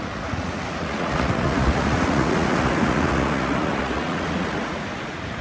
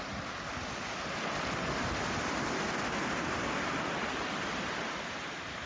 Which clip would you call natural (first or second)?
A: second